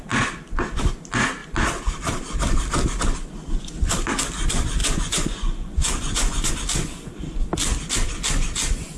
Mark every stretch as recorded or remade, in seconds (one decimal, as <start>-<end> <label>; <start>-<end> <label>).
0.0-4.8 recorded; 4.8-6.5 remade; 6.5-9.0 recorded